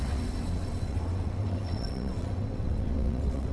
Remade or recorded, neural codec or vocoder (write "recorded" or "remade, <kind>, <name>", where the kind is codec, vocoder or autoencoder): remade, vocoder, WaveNeXt